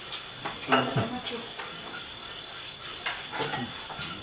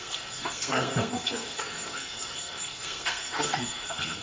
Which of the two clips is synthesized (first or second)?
second